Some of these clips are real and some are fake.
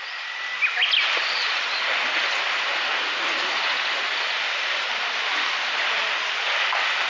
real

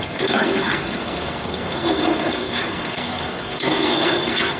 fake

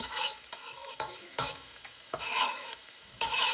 fake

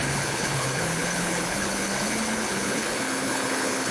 fake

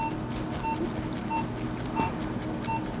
real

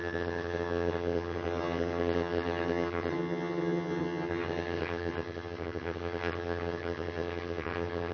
fake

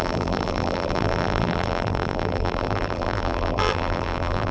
fake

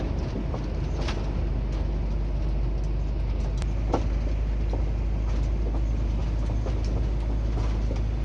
real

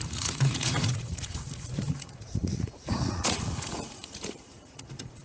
fake